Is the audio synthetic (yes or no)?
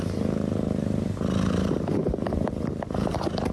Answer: yes